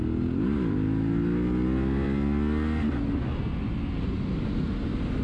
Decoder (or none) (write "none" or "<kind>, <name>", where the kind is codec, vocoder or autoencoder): none